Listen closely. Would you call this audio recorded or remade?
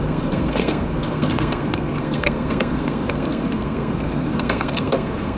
remade